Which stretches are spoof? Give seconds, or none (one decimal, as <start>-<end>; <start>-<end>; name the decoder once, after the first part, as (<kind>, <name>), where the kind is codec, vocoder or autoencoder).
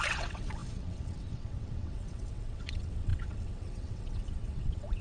0.0-5.0 (vocoder, WaveNeXt)